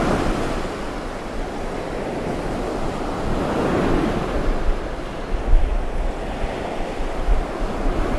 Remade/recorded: recorded